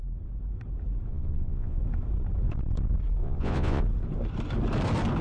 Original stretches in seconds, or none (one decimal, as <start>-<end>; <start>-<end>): 0.0-1.1; 1.8-3.2; 3.8-5.2